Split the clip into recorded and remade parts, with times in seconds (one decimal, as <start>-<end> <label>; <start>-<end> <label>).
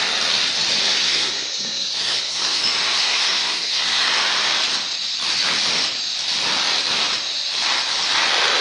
0.0-0.9 recorded; 0.9-2.6 remade; 2.6-3.0 recorded; 3.0-4.1 remade; 4.1-8.6 recorded